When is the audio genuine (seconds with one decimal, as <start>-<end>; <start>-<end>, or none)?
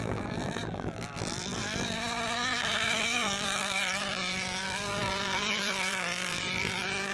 none